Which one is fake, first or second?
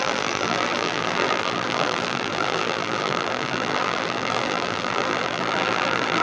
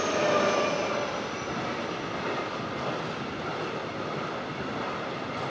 first